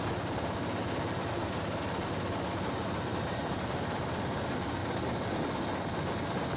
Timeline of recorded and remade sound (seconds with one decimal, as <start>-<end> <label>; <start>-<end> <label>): 0.0-1.2 recorded; 1.2-1.8 remade; 1.8-3.1 recorded; 3.1-4.2 remade; 4.2-6.6 recorded